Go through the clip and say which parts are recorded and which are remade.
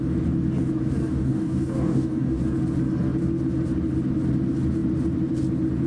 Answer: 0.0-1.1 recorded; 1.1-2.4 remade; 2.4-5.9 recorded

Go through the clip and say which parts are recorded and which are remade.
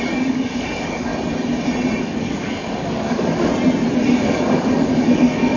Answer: 0.0-1.1 remade; 1.1-2.0 recorded; 2.0-3.5 remade; 3.5-4.2 recorded; 4.2-5.6 remade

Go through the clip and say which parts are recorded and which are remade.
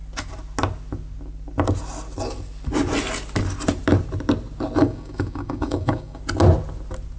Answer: 0.0-4.8 recorded; 4.8-6.2 remade; 6.2-7.2 recorded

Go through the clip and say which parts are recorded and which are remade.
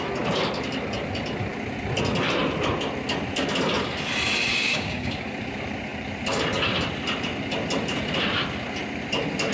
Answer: 0.0-4.5 recorded; 4.5-5.1 remade; 5.1-9.5 recorded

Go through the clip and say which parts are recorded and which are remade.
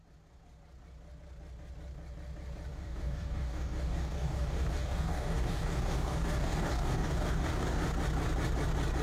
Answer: 0.0-2.7 recorded; 2.7-7.8 remade; 7.8-9.0 recorded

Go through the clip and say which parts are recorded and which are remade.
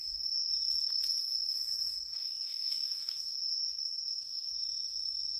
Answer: 0.0-0.5 remade; 0.5-1.2 recorded; 1.2-4.6 remade; 4.6-5.4 recorded